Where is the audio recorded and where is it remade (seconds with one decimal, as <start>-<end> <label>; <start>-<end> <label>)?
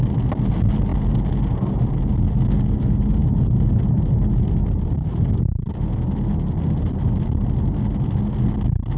0.0-9.0 recorded